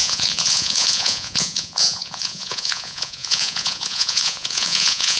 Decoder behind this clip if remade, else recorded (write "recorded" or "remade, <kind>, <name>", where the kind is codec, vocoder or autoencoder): remade, vocoder, Vocos